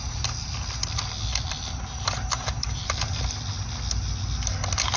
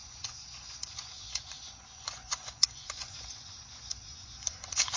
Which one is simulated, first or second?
second